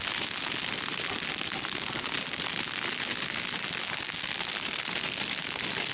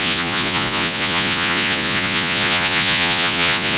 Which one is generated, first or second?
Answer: second